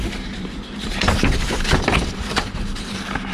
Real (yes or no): no